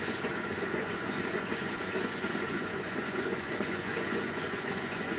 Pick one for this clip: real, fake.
fake